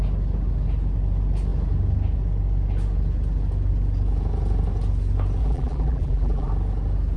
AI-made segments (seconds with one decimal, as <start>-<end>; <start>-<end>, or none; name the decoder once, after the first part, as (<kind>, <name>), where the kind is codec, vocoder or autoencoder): 5.4-6.5 (vocoder, BigVGAN v2)